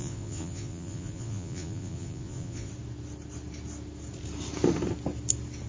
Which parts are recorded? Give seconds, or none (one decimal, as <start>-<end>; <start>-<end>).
2.7-5.7